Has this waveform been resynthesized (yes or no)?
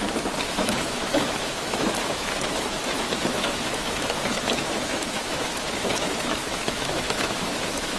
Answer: yes